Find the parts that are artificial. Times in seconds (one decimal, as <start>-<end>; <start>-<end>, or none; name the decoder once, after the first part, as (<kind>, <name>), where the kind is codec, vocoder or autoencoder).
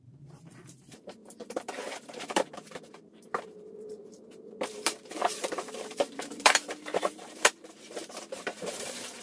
0.0-9.2 (vocoder, BigVGAN v2)